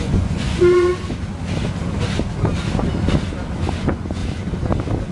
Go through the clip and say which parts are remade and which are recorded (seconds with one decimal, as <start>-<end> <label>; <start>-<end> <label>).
0.0-0.9 remade; 0.9-3.8 recorded; 3.8-4.2 remade; 4.2-5.1 recorded